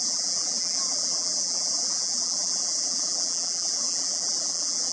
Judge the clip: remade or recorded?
remade